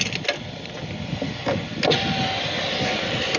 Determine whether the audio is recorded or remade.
recorded